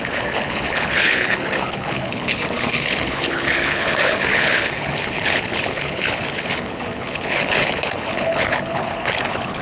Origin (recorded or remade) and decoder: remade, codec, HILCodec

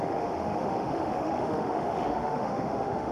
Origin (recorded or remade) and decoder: remade, autoencoder, DAC-VAE